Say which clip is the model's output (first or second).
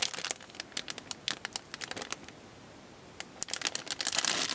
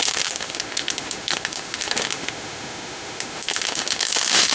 second